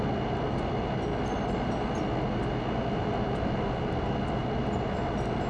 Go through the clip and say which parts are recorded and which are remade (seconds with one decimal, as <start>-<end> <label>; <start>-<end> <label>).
0.0-5.5 recorded